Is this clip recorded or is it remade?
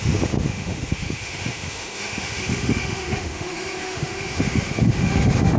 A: remade